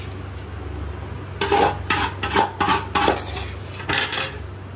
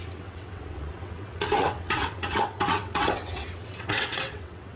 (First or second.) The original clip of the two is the first